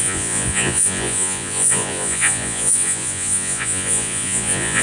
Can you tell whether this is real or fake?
fake